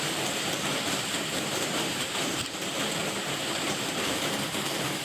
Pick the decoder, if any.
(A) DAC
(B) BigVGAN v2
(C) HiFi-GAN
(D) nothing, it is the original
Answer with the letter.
B